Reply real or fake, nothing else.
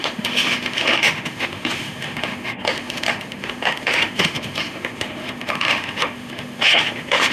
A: fake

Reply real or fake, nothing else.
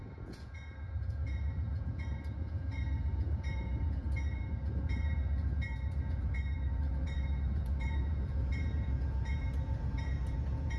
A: fake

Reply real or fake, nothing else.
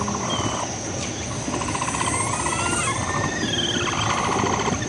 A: real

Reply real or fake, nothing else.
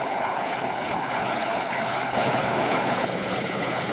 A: fake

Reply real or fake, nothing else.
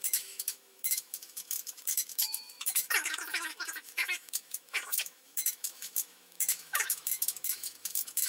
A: fake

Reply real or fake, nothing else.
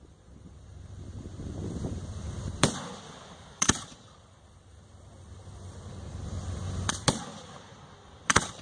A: fake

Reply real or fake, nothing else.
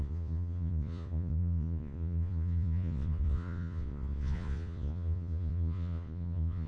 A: fake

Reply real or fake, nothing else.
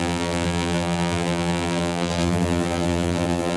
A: fake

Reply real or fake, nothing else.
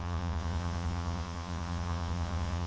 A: fake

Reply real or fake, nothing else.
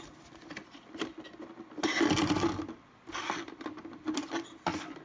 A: real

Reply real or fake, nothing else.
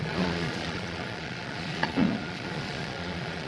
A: fake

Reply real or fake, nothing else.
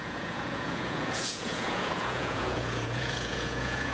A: fake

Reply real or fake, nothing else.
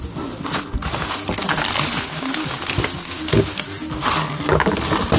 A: real